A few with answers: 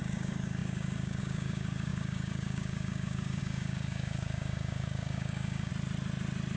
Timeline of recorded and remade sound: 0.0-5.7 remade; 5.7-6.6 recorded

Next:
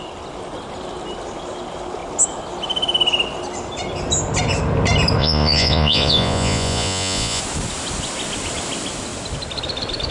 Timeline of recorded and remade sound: 0.0-5.2 recorded; 5.2-7.4 remade; 7.4-10.1 recorded

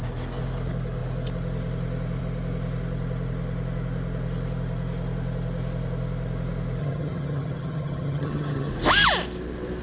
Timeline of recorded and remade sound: 0.0-6.8 recorded; 6.8-8.7 remade; 8.7-9.8 recorded

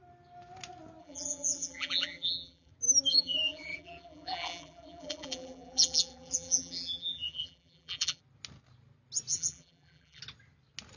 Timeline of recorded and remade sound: 0.0-1.0 recorded; 1.0-2.7 remade; 2.7-3.1 recorded; 3.1-8.2 remade; 8.2-9.3 recorded; 9.3-10.2 remade; 10.2-11.0 recorded

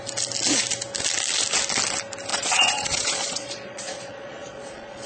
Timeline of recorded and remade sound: 0.0-2.3 recorded; 2.3-5.1 remade

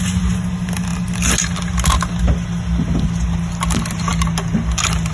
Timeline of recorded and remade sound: 0.0-5.1 recorded